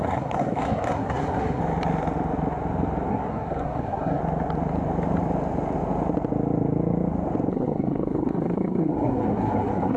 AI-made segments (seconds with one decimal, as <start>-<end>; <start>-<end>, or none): 0.0-1.6; 3.1-4.2; 7.5-10.0